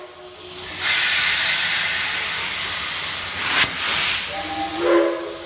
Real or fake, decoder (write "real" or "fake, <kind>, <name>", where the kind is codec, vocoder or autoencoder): real